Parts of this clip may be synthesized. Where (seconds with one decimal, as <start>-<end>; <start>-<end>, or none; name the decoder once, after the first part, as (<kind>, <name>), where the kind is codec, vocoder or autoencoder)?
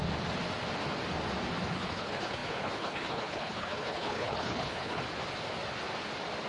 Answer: 1.7-5.0 (codec, HILCodec)